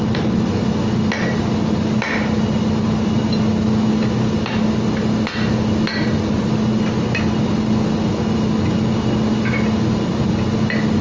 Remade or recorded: recorded